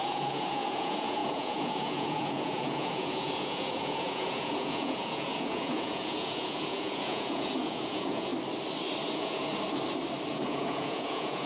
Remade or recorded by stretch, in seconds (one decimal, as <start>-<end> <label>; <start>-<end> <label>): 0.0-8.3 remade; 8.3-9.1 recorded; 9.1-9.5 remade; 9.5-10.3 recorded; 10.3-11.5 remade